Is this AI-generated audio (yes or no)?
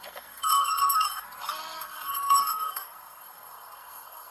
yes